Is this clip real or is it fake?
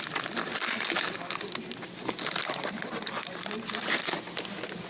real